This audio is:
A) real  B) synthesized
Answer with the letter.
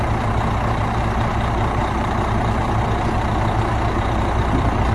B